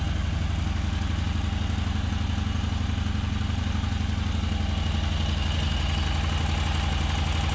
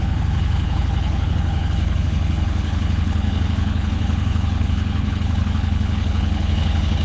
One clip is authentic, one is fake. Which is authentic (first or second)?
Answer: first